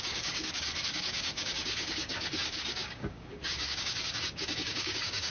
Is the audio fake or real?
fake